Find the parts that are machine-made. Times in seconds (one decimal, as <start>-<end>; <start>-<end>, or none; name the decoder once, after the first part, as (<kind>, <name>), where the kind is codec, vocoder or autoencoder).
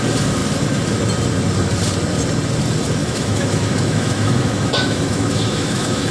3.0-6.1 (autoencoder, DAC-VAE)